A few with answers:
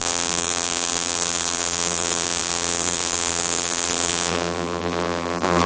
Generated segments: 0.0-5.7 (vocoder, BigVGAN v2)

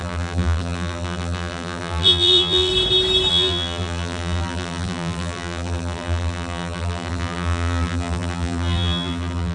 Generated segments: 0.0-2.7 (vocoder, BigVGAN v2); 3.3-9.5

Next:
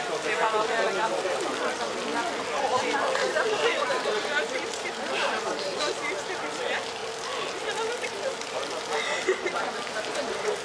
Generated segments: 3.7-5.8 (vocoder, BigVGAN v2)

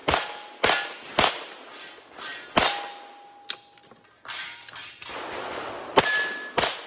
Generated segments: none

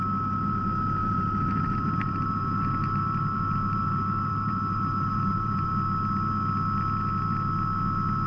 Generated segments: 1.0-5.7 (vocoder, BigVGAN v2)

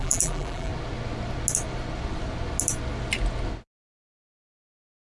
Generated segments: 0.0-0.7 (vocoder, BigVGAN v2); 3.8-5.1